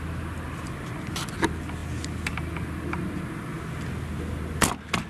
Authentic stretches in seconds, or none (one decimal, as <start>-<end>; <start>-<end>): 0.0-5.1